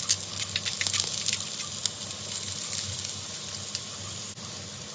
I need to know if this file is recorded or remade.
recorded